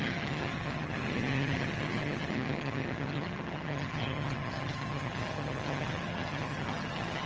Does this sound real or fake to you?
fake